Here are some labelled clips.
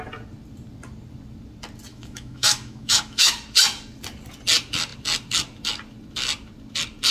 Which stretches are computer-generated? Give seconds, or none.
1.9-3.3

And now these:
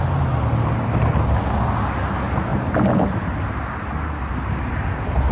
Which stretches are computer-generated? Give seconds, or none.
none

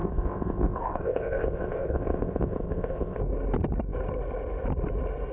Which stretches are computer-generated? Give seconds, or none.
0.0-3.2

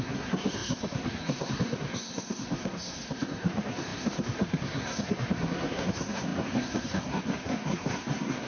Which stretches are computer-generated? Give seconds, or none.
0.0-8.5

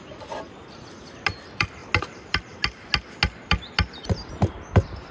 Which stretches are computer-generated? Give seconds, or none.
none

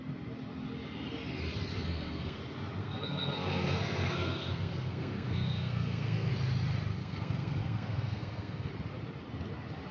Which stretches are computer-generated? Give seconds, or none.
1.7-2.4; 2.8-6.3; 7.0-8.7

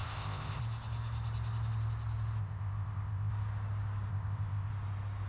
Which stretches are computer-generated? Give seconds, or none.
0.0-0.6; 2.4-3.3; 4.1-4.7